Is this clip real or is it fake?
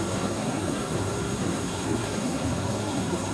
fake